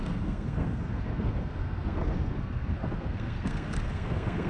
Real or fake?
fake